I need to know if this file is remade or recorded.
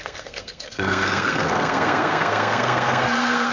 remade